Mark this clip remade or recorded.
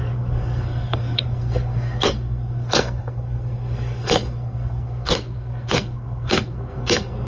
remade